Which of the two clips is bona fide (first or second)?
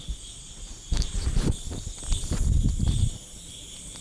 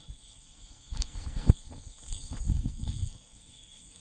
first